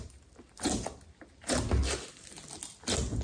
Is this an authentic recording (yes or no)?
yes